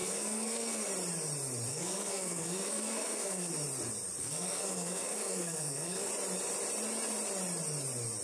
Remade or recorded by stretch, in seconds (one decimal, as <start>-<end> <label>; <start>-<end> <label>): 0.0-0.9 remade; 0.9-1.7 recorded; 1.7-3.5 remade; 3.5-4.2 recorded; 4.2-6.1 remade; 6.1-8.2 recorded